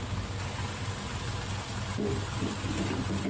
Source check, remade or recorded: recorded